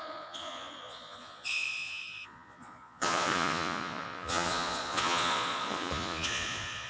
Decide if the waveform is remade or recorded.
remade